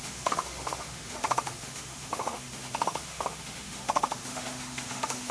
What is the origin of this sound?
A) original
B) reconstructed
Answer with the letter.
B